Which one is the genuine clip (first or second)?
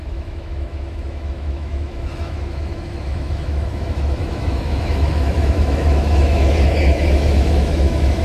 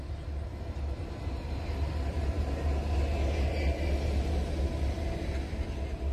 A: second